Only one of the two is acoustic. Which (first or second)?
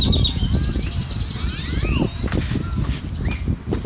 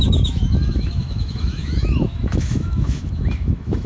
first